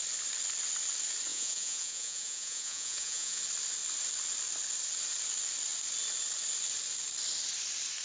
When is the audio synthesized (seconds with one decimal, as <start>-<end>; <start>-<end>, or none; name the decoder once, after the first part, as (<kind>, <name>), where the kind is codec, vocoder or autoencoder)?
1.3-3.4 (vocoder, Vocos)